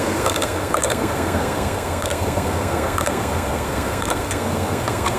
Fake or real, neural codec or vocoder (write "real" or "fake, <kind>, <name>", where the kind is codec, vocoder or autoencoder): fake, codec, SNAC